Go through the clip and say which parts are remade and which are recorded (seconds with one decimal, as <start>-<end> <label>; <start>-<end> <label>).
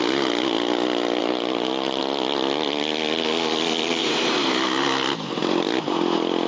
0.0-1.2 recorded; 1.2-2.0 remade; 2.0-4.0 recorded; 4.0-4.7 remade; 4.7-6.5 recorded